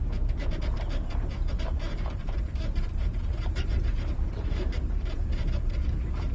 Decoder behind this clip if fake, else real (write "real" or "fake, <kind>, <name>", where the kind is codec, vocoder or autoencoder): fake, vocoder, BigVGAN v2